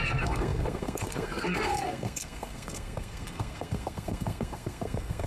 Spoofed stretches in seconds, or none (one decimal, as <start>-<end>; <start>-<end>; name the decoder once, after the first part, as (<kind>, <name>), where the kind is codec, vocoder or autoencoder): 0.0-5.3 (codec, SNAC)

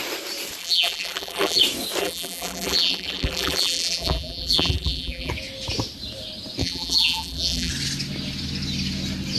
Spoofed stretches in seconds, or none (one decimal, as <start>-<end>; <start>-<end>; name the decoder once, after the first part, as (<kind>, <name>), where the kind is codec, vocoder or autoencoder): 0.6-1.6 (vocoder, BigVGAN v2); 2.0-5.3; 6.6-7.7

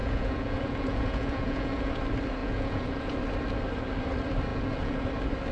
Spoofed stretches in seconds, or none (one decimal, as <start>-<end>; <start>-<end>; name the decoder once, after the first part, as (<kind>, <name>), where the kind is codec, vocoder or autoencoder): 0.0-2.0 (vocoder, Vocos); 2.4-3.2; 4.5-5.1

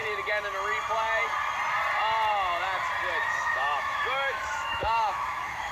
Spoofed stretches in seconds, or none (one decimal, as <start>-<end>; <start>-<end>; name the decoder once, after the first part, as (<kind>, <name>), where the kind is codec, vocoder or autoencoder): 3.4-5.7 (autoencoder, DAC-VAE)